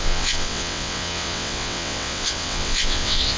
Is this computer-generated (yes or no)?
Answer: yes